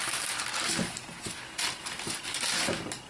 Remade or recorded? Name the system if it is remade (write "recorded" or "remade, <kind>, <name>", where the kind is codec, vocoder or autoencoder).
recorded